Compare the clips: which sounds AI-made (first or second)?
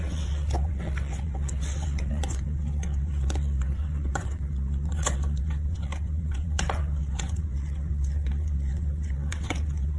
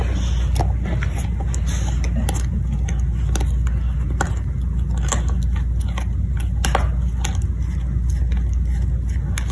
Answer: first